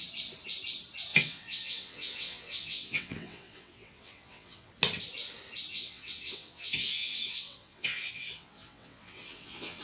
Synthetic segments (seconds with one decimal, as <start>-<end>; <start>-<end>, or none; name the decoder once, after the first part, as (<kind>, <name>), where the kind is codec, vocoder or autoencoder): 1.1-4.7 (vocoder, WaveNeXt); 5.7-9.8

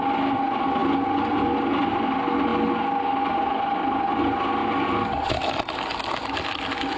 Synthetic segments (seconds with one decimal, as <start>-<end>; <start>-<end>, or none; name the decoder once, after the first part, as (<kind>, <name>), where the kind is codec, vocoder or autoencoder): none